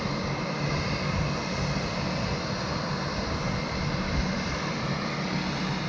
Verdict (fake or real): real